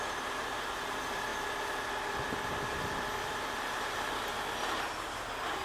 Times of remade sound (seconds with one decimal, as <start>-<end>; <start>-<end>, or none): none